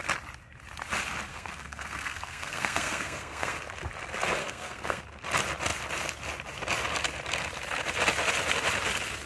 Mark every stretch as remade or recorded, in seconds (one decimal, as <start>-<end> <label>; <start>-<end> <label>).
0.0-1.3 recorded; 1.3-3.6 remade; 3.6-4.4 recorded; 4.4-5.0 remade; 5.0-9.3 recorded